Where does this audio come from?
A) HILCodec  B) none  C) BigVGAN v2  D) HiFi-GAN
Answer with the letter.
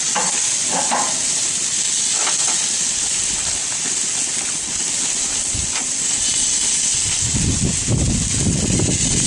B